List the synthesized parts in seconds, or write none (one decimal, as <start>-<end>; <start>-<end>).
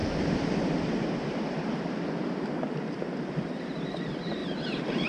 0.0-4.4